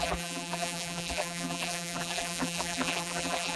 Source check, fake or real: fake